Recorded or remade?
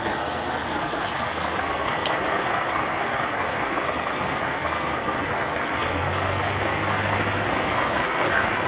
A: remade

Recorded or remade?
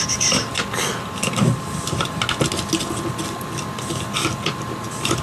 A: recorded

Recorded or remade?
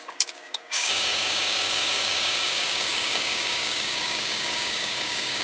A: remade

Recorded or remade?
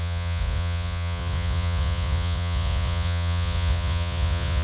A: remade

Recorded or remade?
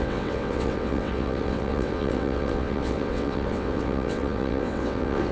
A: remade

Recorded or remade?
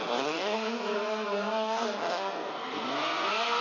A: remade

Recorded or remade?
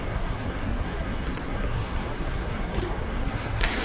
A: remade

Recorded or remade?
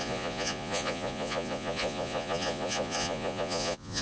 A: remade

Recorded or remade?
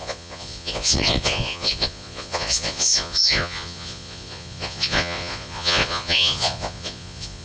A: remade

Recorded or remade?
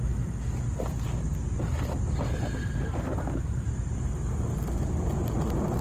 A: recorded